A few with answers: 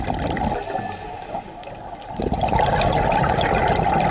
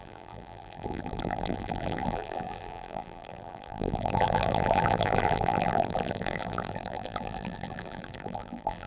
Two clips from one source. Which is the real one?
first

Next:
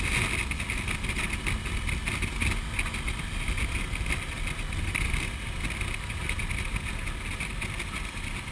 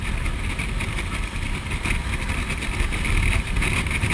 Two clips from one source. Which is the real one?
first